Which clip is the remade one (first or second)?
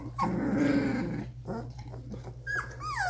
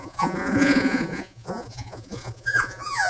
second